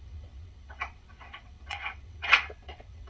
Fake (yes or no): yes